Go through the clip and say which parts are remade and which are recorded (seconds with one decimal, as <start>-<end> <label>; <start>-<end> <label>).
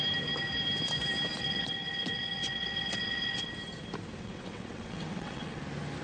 0.0-1.4 recorded; 1.4-3.5 remade; 3.5-4.2 recorded; 4.2-5.6 remade; 5.6-6.0 recorded